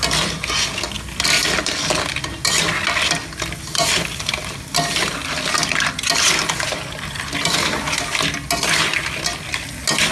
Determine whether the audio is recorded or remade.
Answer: recorded